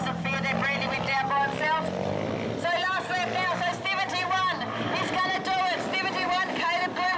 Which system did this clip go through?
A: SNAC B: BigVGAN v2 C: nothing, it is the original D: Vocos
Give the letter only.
C